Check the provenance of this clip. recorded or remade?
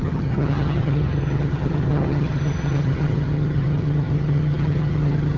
remade